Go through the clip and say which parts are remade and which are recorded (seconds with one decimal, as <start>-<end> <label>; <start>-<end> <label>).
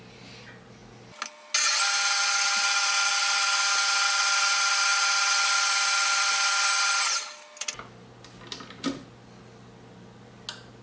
0.0-10.8 recorded